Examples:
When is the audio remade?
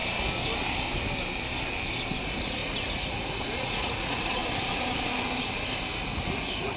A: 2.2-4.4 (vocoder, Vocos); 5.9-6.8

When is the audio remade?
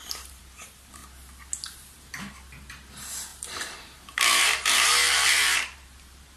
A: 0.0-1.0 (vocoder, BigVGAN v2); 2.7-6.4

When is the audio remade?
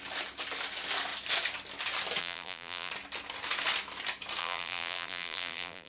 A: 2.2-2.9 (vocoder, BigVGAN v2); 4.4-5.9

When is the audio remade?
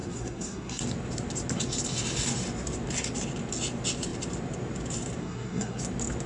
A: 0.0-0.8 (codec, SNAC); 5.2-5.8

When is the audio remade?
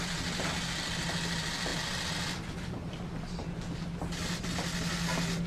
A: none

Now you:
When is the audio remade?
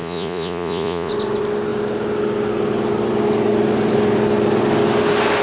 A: 0.0-1.1 (vocoder, Vocos)